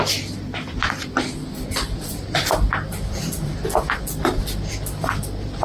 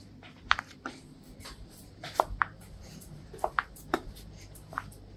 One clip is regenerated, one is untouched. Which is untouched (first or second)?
first